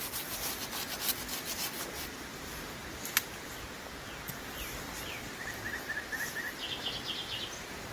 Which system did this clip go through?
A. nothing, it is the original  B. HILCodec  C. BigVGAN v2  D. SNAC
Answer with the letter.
A